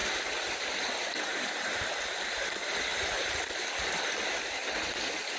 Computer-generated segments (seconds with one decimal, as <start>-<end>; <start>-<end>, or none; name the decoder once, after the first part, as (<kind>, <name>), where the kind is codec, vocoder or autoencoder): 1.3-2.0 (vocoder, BigVGAN v2); 2.9-3.4